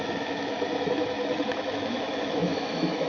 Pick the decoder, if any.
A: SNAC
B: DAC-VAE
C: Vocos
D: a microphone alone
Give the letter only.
B